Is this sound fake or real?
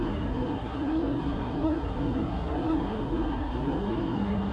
fake